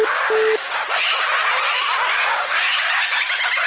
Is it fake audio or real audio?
real